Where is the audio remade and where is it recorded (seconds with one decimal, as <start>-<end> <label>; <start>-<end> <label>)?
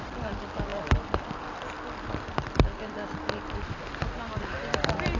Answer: 0.0-5.2 recorded